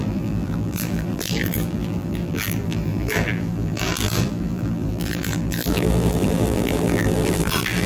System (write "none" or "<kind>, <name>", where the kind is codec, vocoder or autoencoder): vocoder, BigVGAN v2